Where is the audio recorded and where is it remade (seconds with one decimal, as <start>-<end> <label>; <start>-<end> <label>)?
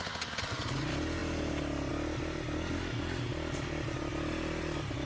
0.0-5.1 recorded